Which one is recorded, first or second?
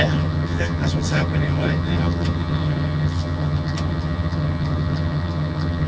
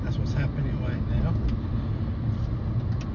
second